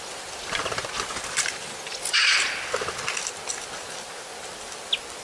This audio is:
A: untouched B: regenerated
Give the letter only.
A